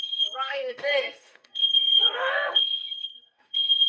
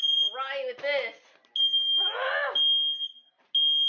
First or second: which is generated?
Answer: first